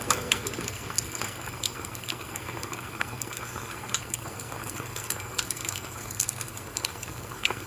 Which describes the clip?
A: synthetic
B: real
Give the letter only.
A